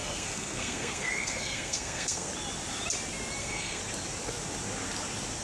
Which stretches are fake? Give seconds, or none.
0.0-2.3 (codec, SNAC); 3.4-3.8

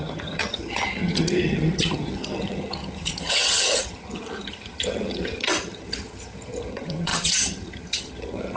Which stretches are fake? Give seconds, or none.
0.0-8.6 (vocoder, HiFi-GAN)

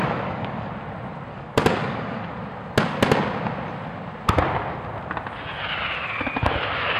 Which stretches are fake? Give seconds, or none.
0.0-0.7 (codec, DAC); 1.3-2.3

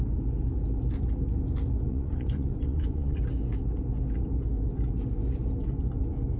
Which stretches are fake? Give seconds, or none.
1.9-3.2 (vocoder, Vocos)

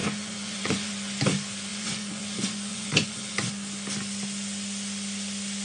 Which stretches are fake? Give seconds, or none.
0.0-0.9 (vocoder, Vocos); 1.7-3.5

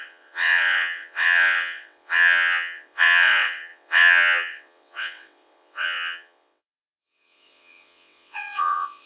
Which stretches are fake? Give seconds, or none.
0.0-9.1 (vocoder, WaveNeXt)

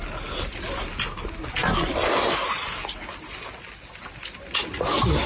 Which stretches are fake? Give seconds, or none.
none

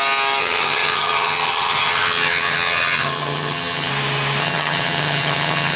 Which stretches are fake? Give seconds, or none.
0.4-3.9 (vocoder, HiFi-GAN); 4.4-5.8